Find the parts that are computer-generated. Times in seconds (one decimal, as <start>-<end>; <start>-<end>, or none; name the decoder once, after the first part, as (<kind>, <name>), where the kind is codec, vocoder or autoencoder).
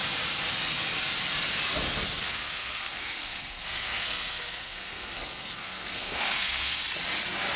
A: 2.2-6.8 (codec, SNAC)